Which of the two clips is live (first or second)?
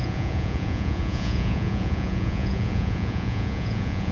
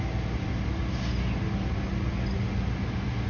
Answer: second